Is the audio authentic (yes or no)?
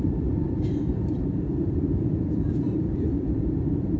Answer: no